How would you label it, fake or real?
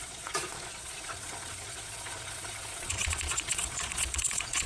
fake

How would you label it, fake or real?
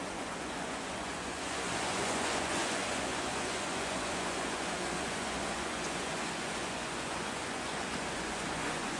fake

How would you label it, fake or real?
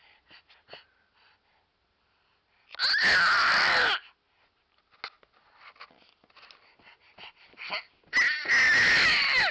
real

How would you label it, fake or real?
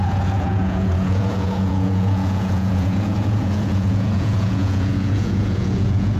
fake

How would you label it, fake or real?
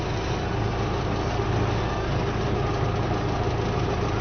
real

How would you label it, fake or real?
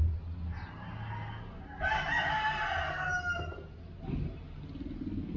real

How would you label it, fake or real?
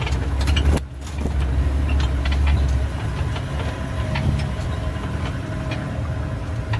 real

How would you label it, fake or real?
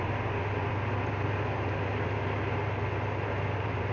real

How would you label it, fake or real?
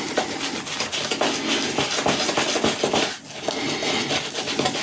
real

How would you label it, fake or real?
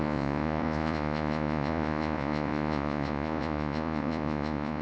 fake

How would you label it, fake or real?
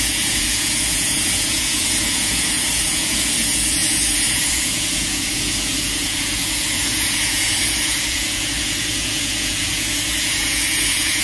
fake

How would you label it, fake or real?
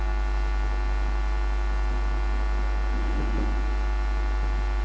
real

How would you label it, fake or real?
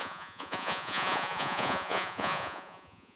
fake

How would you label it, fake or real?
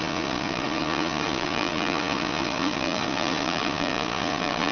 fake